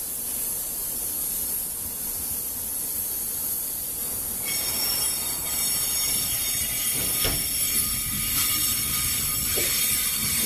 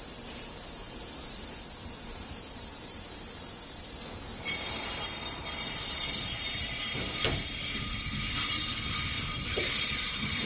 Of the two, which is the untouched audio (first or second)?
first